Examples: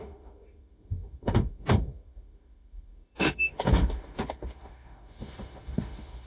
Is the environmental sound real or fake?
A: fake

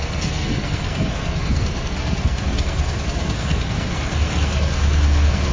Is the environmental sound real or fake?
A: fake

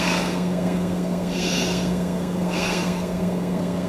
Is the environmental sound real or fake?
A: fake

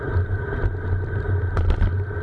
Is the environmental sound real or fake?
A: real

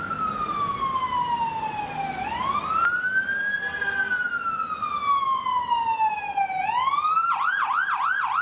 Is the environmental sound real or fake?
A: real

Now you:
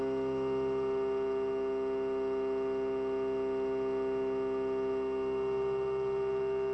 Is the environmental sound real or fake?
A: real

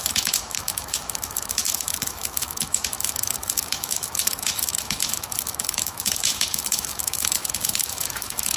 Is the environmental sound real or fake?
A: fake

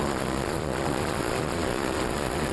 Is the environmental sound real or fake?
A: fake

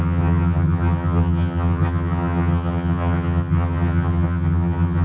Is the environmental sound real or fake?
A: fake